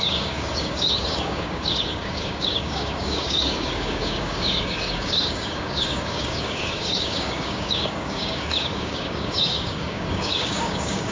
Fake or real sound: fake